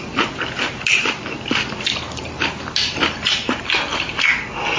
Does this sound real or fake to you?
fake